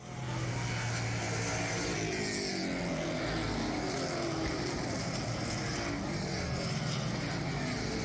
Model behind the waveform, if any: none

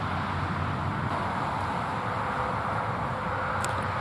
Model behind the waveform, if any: none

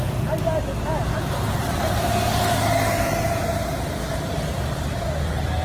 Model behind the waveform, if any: none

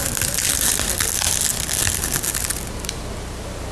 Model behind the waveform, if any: none